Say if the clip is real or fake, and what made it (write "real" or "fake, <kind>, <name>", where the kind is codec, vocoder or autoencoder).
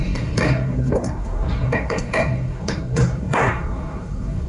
fake, codec, SNAC